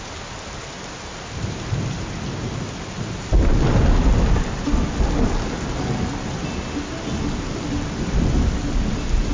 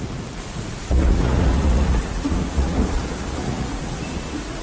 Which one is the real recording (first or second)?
first